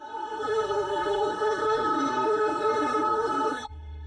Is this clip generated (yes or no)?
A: yes